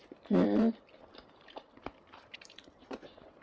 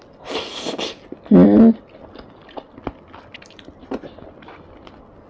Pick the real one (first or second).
second